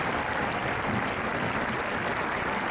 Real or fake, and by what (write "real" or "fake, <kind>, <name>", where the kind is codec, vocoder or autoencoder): real